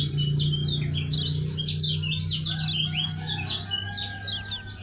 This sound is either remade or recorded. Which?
recorded